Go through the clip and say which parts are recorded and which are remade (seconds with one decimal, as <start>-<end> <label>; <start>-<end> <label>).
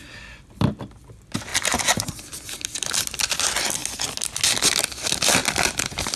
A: 0.0-6.2 recorded